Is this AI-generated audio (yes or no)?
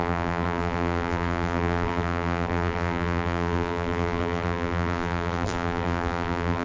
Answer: yes